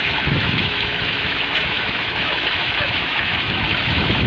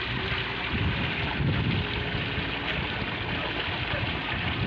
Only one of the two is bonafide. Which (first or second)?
second